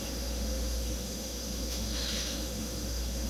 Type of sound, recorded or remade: remade